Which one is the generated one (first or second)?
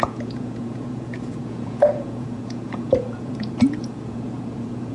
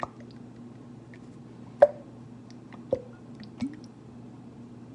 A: first